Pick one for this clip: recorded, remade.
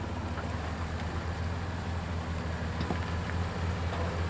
recorded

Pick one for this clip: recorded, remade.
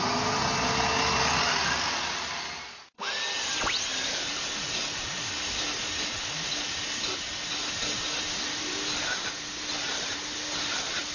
recorded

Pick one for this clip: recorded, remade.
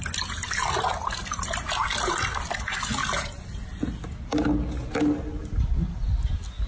recorded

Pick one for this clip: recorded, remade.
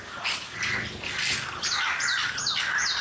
recorded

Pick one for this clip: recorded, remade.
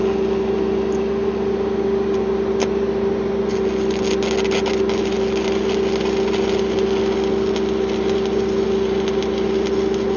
recorded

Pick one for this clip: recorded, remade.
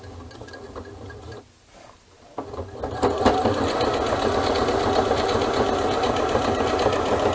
recorded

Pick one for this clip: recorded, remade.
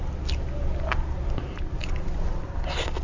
recorded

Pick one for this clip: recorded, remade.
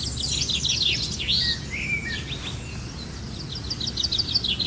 recorded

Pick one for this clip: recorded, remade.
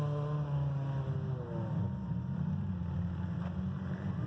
recorded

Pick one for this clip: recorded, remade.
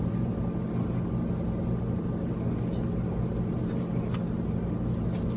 recorded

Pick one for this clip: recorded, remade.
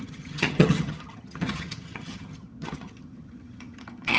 remade